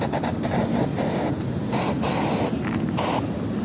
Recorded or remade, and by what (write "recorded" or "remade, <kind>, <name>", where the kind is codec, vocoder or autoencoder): recorded